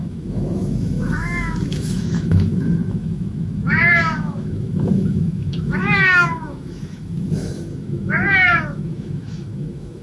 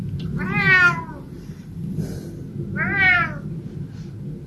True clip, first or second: second